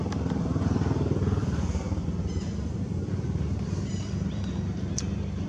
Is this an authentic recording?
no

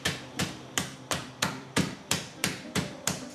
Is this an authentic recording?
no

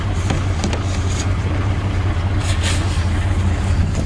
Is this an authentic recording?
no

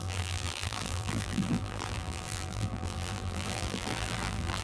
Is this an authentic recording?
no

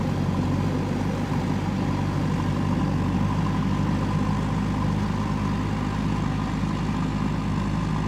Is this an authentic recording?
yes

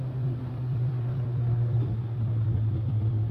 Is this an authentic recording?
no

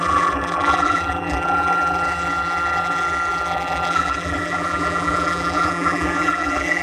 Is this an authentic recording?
no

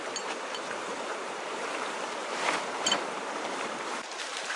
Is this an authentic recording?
no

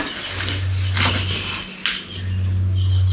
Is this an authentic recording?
yes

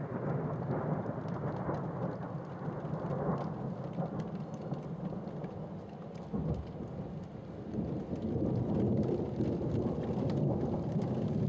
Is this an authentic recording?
yes